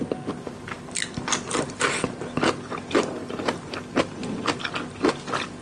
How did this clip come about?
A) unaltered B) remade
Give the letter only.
A